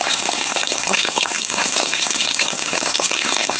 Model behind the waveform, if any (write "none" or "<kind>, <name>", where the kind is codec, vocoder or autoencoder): codec, SNAC